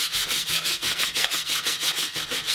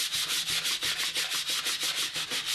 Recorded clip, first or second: second